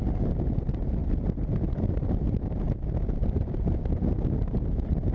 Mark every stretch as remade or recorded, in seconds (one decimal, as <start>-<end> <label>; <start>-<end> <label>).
0.0-5.1 recorded